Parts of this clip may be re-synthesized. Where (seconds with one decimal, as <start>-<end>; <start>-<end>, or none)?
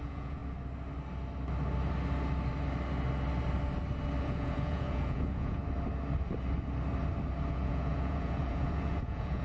0.0-0.4; 4.2-5.6; 7.5-9.4